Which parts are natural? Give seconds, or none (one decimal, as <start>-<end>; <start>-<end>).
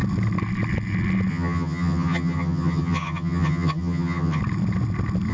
0.0-1.3; 4.4-5.3